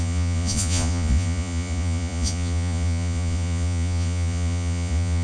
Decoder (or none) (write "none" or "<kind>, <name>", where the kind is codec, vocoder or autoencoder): vocoder, Vocos